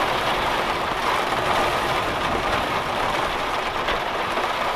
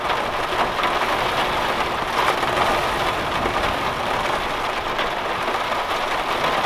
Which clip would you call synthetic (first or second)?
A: first